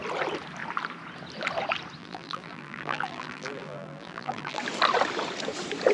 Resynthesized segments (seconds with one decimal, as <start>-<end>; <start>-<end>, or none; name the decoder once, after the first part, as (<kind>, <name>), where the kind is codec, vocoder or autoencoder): 2.0-4.6 (vocoder, BigVGAN v2)